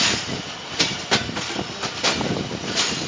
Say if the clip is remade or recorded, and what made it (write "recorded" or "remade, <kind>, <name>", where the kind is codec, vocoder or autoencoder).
recorded